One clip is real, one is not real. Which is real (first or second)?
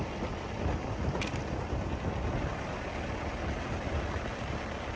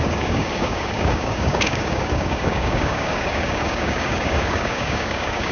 first